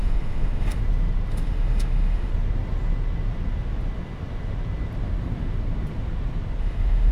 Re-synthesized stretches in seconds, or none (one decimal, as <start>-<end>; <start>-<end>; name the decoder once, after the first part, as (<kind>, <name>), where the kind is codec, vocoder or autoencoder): 0.0-0.8 (autoencoder, DAC-VAE); 1.3-2.3; 6.6-7.1